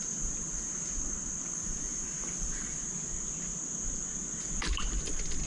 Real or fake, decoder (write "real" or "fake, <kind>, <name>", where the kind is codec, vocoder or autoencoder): real